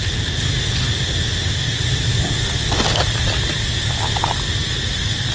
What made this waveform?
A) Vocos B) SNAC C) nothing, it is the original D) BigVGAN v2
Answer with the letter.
C